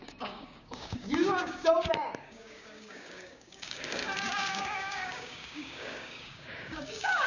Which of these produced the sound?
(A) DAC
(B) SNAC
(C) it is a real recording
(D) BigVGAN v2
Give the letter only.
A